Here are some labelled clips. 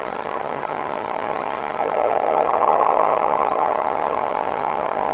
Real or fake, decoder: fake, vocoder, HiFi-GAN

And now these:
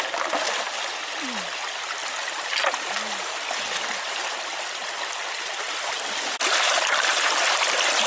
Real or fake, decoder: real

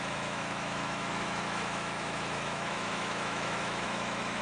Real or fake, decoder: fake, autoencoder, DAC-VAE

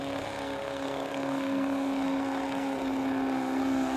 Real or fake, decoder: fake, codec, SNAC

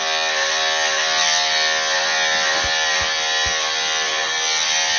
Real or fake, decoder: real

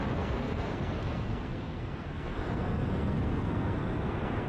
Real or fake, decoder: fake, codec, SNAC